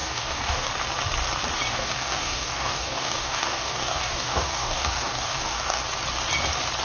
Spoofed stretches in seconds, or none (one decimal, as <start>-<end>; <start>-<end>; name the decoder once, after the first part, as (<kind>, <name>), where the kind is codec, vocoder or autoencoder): 0.0-0.7 (codec, DAC); 1.7-5.8